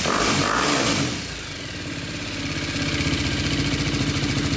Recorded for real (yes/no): yes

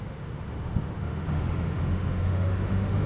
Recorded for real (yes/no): no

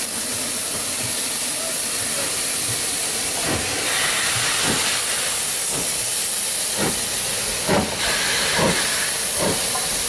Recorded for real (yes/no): yes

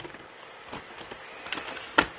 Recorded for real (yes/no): yes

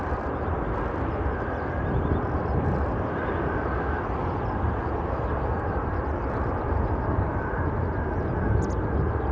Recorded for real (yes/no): yes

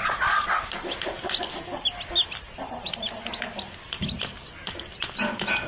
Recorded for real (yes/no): yes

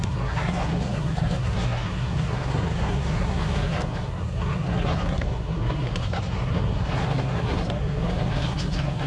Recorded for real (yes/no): no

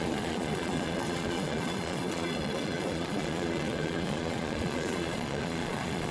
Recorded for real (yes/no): no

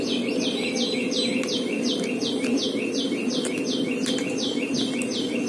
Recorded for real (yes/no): no